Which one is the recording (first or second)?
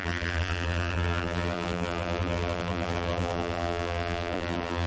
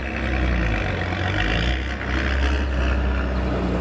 second